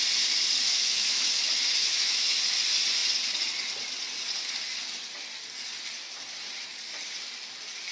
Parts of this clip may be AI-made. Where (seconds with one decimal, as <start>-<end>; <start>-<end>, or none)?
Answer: 0.7-1.4; 1.8-2.4